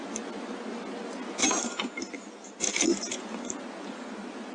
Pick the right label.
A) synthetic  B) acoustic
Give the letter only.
B